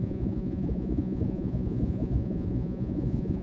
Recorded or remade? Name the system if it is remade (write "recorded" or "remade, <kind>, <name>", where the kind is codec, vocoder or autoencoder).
remade, vocoder, Vocos